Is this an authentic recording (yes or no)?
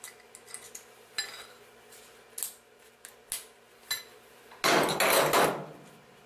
yes